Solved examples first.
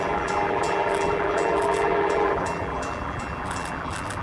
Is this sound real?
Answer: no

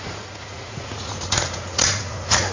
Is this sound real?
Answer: no